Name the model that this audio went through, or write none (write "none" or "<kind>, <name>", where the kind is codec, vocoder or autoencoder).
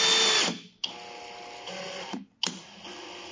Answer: none